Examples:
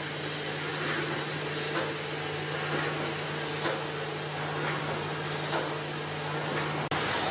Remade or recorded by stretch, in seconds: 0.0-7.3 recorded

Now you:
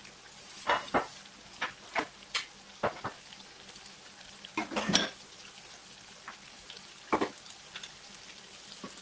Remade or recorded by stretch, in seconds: 0.0-9.0 recorded

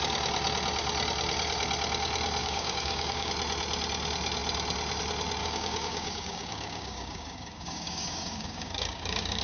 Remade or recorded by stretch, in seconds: 0.0-2.4 recorded; 2.4-3.3 remade; 3.3-5.4 recorded; 5.4-9.4 remade

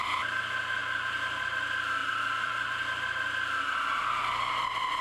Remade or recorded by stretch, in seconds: 0.0-0.8 recorded; 0.8-1.4 remade; 1.4-2.0 recorded; 2.0-3.0 remade; 3.0-5.0 recorded

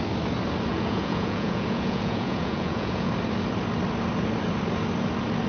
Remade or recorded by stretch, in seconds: 0.0-0.7 recorded; 0.7-3.1 remade; 3.1-5.5 recorded

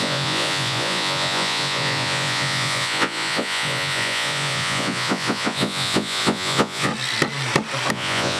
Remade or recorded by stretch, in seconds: 0.0-6.9 remade; 6.9-7.9 recorded; 7.9-8.4 remade